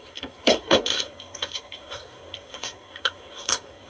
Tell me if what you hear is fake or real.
fake